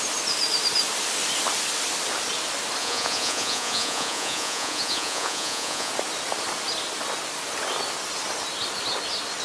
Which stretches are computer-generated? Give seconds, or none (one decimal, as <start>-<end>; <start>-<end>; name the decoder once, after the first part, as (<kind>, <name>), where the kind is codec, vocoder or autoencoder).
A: 2.8-5.9 (vocoder, Vocos)